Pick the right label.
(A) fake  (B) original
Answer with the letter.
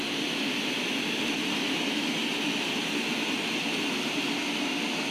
B